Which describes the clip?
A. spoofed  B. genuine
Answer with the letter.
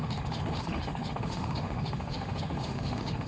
A